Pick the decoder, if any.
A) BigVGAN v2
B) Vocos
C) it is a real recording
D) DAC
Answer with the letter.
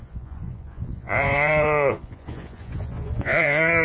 B